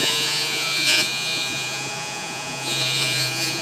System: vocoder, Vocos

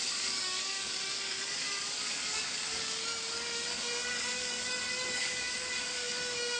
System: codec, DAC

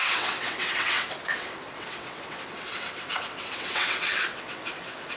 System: vocoder, WaveNeXt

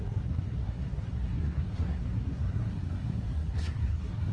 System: codec, SNAC